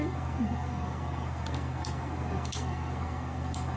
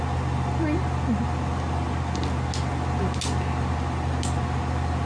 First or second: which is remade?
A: first